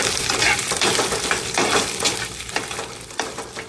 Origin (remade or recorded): remade